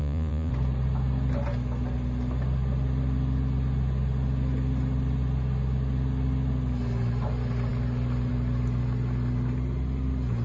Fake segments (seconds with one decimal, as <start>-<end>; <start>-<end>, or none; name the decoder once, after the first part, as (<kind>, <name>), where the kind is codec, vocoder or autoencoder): 0.0-0.5 (vocoder, Vocos)